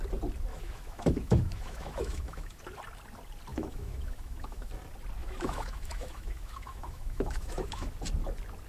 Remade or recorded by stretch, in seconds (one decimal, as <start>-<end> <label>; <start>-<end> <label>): 0.0-0.5 recorded; 0.5-2.6 remade; 2.6-3.5 recorded; 3.5-4.7 remade; 4.7-5.2 recorded; 5.2-7.9 remade; 7.9-8.7 recorded